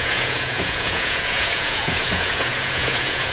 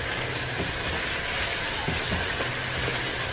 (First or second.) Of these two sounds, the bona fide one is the second